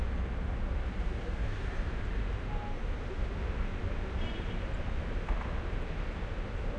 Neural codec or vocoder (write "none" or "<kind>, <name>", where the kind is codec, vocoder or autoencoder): vocoder, BigVGAN v2